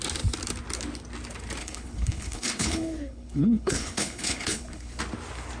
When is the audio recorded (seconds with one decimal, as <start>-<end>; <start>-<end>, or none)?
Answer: 0.0-1.6; 5.0-5.6